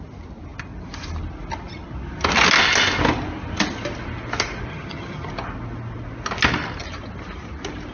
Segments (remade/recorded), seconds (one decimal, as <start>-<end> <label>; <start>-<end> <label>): 0.0-4.7 recorded; 4.7-5.3 remade; 5.3-7.9 recorded